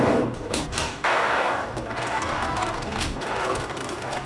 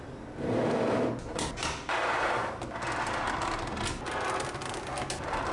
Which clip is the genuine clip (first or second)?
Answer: second